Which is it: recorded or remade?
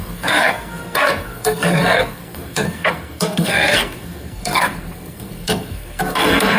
remade